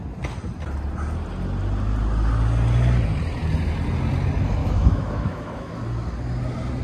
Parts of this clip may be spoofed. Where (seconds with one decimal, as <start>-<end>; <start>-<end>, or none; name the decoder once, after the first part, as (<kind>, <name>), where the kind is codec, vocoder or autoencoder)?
4.6-5.8 (autoencoder, DAC-VAE)